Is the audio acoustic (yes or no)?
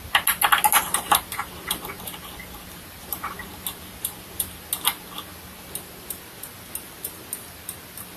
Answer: yes